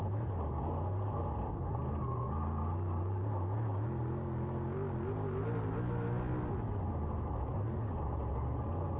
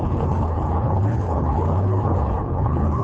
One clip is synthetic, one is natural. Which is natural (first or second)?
first